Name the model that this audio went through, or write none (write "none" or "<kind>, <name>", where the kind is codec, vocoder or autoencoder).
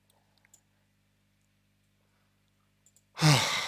none